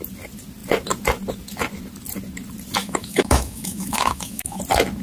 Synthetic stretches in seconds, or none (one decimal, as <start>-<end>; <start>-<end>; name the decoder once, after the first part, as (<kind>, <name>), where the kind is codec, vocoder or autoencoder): 2.8-4.6 (autoencoder, DAC-VAE)